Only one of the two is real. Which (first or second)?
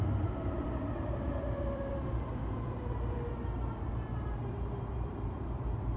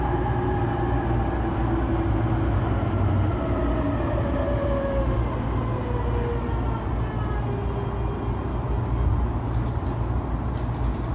second